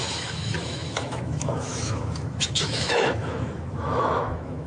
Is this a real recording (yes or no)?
no